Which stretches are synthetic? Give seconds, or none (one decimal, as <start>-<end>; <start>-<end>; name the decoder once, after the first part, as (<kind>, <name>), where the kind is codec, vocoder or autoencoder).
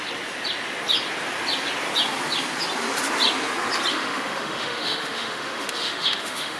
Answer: 3.9-6.6 (autoencoder, DAC-VAE)